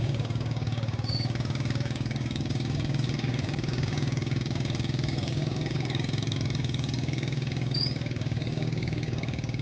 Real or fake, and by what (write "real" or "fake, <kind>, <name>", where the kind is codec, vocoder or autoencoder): fake, codec, DAC